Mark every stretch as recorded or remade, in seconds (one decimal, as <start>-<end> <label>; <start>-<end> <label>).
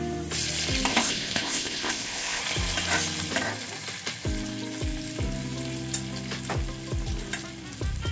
0.0-0.9 recorded; 0.9-2.4 remade; 2.4-8.1 recorded